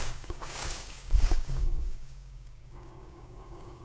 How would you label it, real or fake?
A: fake